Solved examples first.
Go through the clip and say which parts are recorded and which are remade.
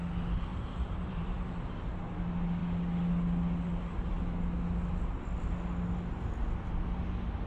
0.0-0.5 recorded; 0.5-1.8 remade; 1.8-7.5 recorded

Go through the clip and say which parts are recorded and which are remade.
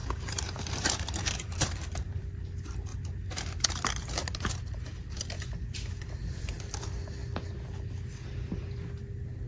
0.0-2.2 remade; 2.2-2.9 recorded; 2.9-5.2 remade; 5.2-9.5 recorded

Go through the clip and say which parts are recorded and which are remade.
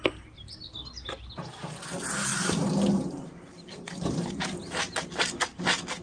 0.0-2.3 recorded; 2.3-4.8 remade; 4.8-6.0 recorded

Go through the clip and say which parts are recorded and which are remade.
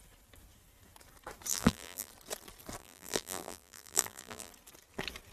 0.0-1.5 recorded; 1.5-2.1 remade; 2.1-2.8 recorded; 2.8-4.5 remade; 4.5-5.3 recorded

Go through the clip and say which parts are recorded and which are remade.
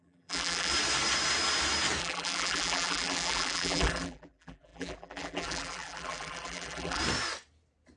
0.0-0.7 remade; 0.7-2.0 recorded; 2.0-7.0 remade; 7.0-8.0 recorded